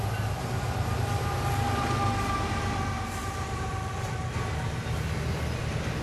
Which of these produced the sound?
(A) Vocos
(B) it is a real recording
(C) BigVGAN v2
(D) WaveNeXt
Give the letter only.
B